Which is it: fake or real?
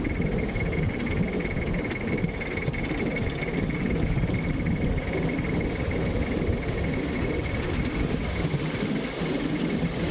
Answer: real